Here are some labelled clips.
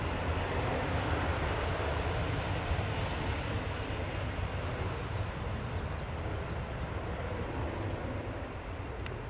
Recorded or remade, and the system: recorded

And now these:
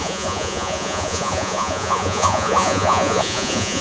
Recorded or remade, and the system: remade, vocoder, Vocos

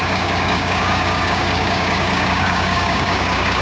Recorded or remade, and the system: remade, codec, DAC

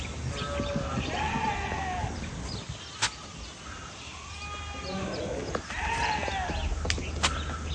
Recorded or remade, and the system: recorded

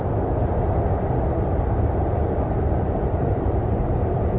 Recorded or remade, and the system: recorded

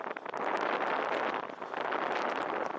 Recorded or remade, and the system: recorded